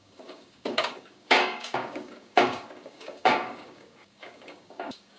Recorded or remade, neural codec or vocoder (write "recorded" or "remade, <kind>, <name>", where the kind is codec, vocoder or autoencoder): remade, codec, DAC